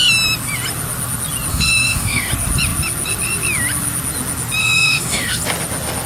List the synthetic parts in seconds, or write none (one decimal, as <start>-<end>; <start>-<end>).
1.5-2.3; 4.6-5.4